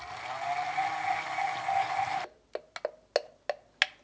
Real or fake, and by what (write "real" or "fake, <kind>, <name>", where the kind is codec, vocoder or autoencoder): real